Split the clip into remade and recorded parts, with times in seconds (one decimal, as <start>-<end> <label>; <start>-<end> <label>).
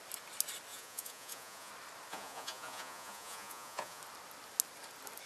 0.0-0.7 recorded; 0.7-1.7 remade; 1.7-2.1 recorded; 2.1-4.0 remade; 4.0-5.3 recorded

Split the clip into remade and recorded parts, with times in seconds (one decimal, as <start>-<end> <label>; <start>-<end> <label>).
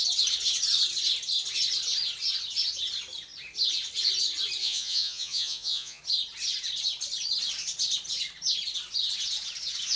0.0-4.6 recorded; 4.6-6.0 remade; 6.0-10.0 recorded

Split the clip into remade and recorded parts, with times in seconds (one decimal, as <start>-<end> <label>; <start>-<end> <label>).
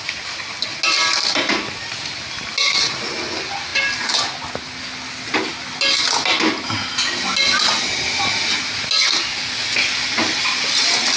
0.0-11.2 recorded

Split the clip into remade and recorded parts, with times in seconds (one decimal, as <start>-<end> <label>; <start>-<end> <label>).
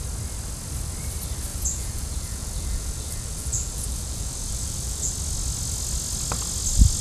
0.0-1.5 recorded; 1.5-5.1 remade; 5.1-7.0 recorded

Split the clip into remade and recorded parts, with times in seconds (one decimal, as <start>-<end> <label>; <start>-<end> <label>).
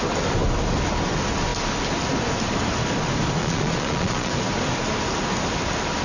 0.0-3.4 recorded; 3.4-4.3 remade; 4.3-6.0 recorded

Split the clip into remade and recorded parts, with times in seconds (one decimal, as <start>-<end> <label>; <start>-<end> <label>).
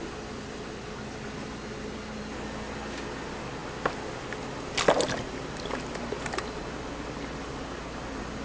0.0-8.4 recorded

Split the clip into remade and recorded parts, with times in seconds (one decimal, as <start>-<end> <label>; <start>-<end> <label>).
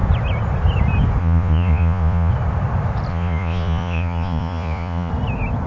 0.0-1.2 recorded; 1.2-2.3 remade; 2.3-3.1 recorded; 3.1-5.1 remade; 5.1-5.7 recorded